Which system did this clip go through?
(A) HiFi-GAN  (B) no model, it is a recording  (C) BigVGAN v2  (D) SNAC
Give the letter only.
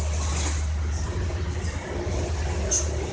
B